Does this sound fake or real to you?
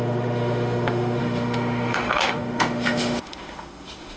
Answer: fake